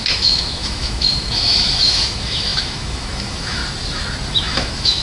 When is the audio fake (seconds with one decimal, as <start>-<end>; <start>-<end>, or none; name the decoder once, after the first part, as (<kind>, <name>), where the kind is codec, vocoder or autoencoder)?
0.0-3.6 (autoencoder, DAC-VAE); 4.3-5.0